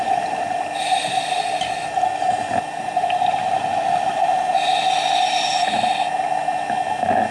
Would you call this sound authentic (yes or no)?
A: yes